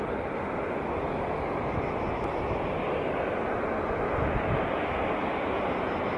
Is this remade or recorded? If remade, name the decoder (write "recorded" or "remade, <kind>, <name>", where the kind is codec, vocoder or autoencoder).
recorded